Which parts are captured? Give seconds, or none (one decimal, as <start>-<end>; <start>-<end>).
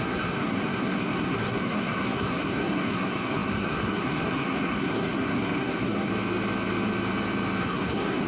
6.1-7.6